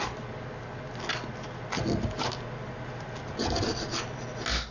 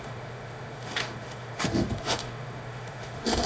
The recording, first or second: first